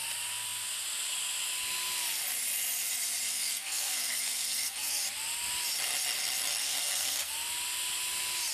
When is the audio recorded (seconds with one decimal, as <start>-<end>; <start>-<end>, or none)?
0.0-3.3; 5.0-6.6; 7.3-8.5